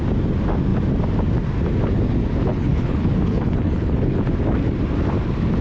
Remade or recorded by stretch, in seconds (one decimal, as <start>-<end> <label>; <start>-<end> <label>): 0.0-2.5 recorded; 2.5-4.2 remade; 4.2-5.6 recorded